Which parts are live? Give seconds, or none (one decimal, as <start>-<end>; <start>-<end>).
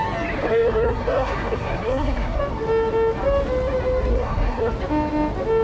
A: 0.0-0.4; 2.4-4.1; 4.7-5.6